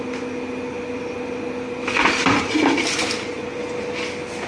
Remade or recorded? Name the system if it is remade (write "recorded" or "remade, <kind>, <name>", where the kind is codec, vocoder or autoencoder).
recorded